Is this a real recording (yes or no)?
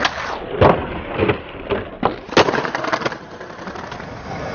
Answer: yes